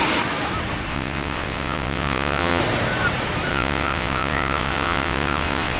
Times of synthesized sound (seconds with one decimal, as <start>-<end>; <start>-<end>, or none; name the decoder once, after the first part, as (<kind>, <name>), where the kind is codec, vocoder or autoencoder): 0.9-2.6 (vocoder, WaveNeXt); 3.5-5.8